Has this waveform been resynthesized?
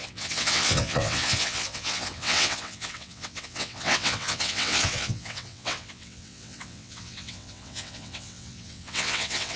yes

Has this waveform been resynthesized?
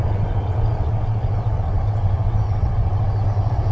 yes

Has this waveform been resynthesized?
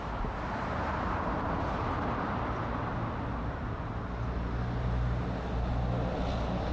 no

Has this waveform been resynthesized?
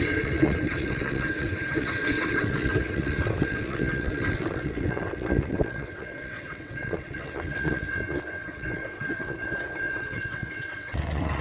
yes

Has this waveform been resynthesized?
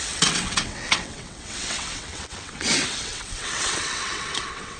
yes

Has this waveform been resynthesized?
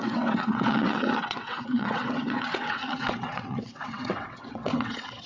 yes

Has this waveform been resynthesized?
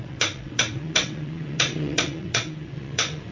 yes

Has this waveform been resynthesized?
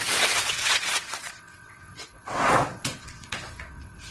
yes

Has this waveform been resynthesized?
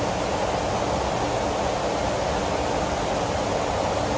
no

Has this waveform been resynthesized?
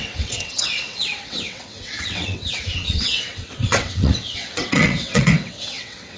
yes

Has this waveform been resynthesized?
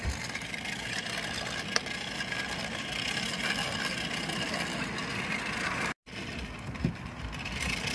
no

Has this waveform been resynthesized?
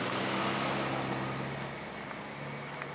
no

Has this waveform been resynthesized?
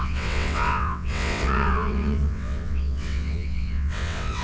yes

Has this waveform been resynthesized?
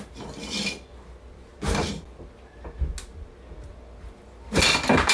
no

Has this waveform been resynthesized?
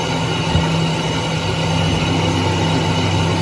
no